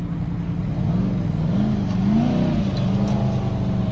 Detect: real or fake real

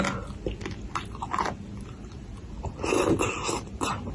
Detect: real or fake real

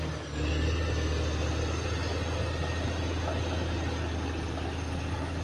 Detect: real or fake real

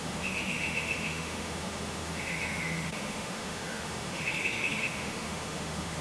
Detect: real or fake fake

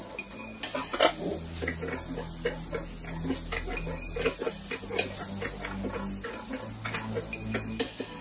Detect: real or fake real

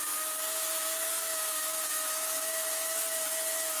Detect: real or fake fake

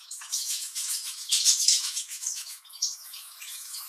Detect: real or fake fake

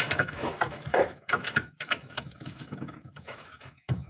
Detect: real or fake fake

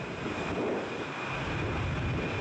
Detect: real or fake real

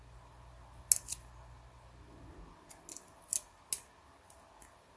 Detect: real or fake real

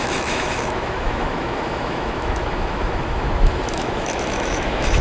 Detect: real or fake fake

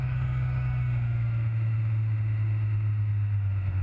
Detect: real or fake fake